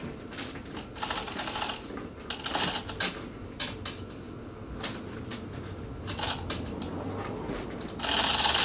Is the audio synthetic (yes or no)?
no